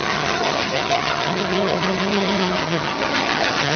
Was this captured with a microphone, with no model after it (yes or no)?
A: no